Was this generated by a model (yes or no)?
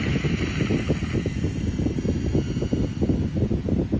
no